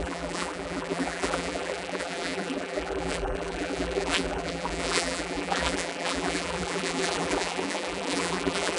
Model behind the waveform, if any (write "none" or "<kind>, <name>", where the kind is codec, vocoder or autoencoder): vocoder, BigVGAN v2